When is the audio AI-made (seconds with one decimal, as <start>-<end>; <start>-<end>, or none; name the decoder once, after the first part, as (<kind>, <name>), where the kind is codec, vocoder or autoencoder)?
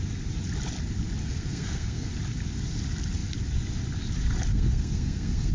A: 1.2-2.1 (codec, SNAC); 4.5-5.5